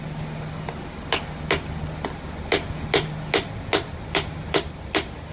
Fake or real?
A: real